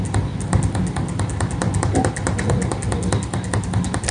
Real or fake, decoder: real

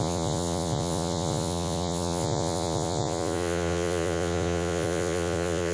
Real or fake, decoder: fake, vocoder, Vocos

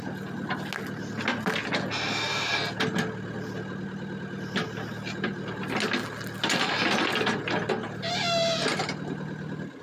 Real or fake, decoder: real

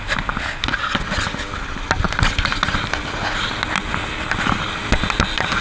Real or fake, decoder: real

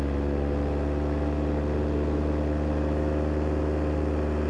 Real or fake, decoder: real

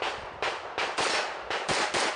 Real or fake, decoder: real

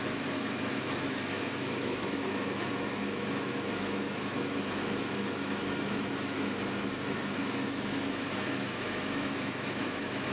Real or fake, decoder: fake, autoencoder, DAC-VAE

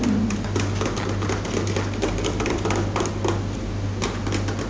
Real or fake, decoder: real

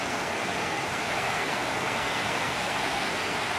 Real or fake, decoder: fake, codec, SNAC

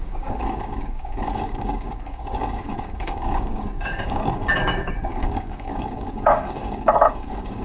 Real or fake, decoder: fake, codec, DAC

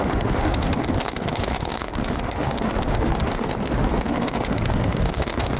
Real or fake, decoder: fake, autoencoder, DAC-VAE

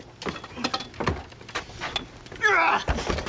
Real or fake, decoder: real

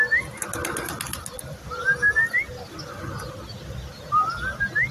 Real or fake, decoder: real